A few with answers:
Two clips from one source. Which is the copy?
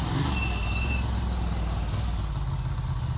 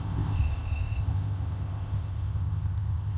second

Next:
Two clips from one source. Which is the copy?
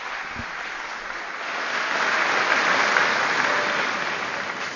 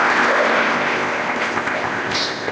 second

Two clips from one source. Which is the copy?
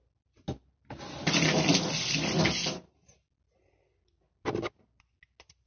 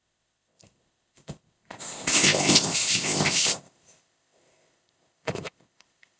second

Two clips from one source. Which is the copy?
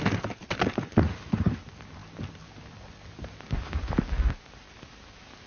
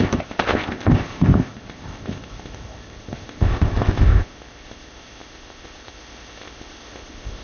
second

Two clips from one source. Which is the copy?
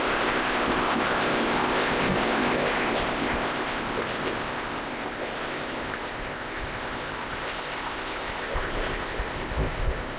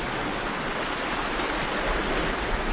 first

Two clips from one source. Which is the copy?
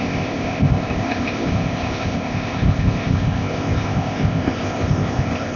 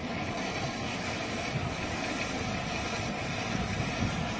first